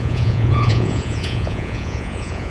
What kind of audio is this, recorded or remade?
remade